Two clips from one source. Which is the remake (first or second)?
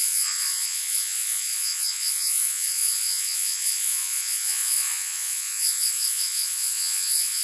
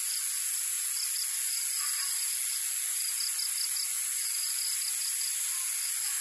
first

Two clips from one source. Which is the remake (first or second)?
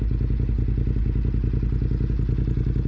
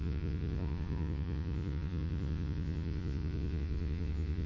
second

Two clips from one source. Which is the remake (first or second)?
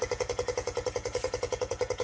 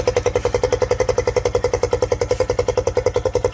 first